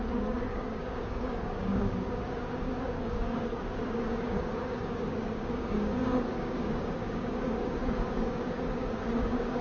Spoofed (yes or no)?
yes